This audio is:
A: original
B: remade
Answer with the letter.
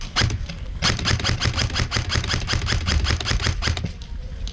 A